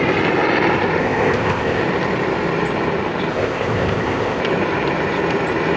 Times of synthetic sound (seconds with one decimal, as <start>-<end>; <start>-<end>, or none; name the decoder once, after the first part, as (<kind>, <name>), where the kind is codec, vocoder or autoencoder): 1.0-1.8 (codec, ZipCodec); 3.3-4.4